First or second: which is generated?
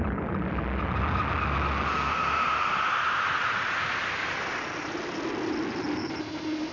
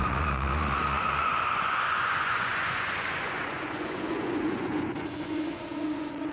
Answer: second